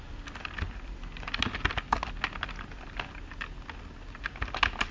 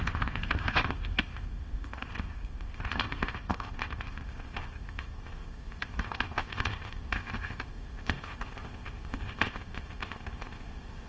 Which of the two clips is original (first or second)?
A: first